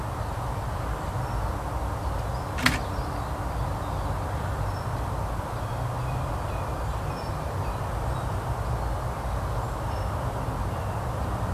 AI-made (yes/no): no